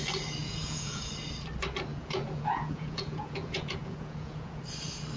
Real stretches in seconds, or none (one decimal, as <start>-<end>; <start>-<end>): 0.0-0.4; 1.1-1.9; 4.6-5.2